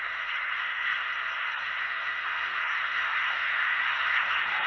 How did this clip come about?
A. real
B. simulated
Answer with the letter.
B